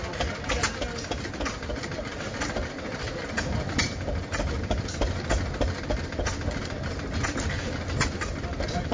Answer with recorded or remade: recorded